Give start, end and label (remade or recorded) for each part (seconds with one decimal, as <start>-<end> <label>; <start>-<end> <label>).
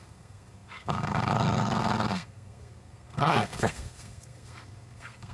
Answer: 0.0-5.3 remade